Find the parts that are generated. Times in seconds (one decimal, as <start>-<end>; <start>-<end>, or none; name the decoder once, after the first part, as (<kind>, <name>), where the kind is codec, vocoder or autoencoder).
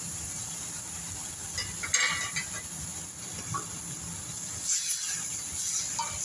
none